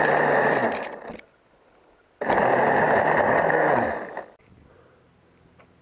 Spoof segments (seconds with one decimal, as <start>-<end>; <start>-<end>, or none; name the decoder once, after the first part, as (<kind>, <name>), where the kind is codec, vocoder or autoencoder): none